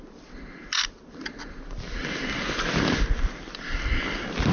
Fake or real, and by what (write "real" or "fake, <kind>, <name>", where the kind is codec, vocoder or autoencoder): real